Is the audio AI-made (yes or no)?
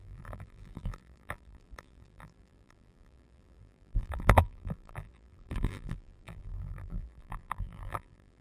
yes